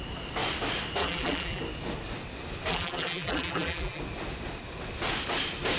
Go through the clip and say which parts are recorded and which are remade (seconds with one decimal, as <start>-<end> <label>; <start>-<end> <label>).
0.0-1.0 recorded; 1.0-1.6 remade; 1.6-2.7 recorded; 2.7-4.0 remade; 4.0-5.8 recorded